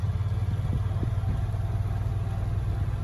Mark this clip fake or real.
real